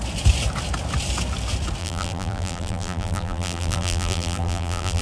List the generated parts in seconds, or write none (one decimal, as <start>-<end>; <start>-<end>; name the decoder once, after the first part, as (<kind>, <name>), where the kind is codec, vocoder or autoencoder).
1.8-5.0 (vocoder, BigVGAN v2)

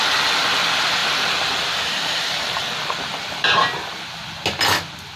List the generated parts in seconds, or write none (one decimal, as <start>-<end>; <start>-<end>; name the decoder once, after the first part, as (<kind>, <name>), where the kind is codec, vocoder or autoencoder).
1.0-3.0 (vocoder, BigVGAN v2)

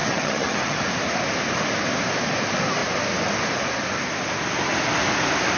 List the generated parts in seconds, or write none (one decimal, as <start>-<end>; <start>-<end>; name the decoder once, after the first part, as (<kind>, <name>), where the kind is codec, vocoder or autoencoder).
0.0-0.8 (vocoder, HiFi-GAN)

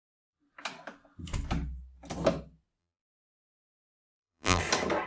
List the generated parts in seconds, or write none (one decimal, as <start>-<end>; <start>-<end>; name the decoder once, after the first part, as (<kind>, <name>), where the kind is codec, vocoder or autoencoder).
2.8-4.6 (vocoder, BigVGAN v2)